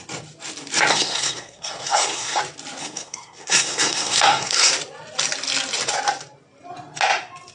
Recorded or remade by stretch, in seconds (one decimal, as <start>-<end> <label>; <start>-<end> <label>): 0.0-0.9 recorded; 0.9-2.4 remade; 2.4-2.8 recorded; 2.8-4.7 remade; 4.7-7.5 recorded